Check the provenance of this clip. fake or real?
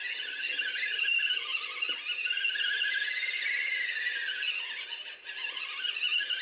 real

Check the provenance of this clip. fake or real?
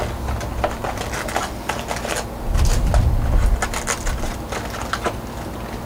real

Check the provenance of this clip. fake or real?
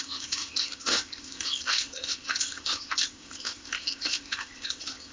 fake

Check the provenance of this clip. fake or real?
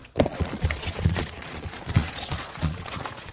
fake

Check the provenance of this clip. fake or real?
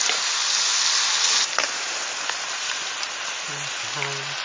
real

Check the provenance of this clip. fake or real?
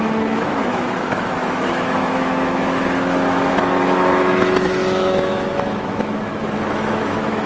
fake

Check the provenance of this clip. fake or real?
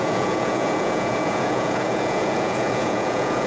fake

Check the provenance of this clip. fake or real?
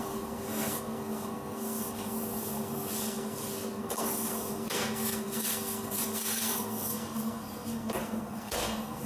fake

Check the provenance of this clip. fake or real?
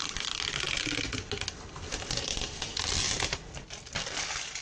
real